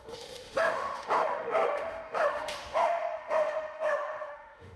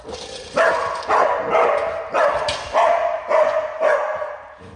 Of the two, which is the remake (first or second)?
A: first